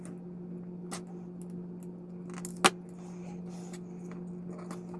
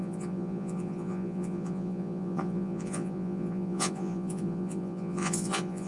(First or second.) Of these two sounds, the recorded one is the first